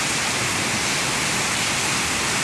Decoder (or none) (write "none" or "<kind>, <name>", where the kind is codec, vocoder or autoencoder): none